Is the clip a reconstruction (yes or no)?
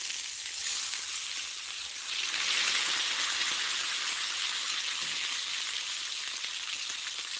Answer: no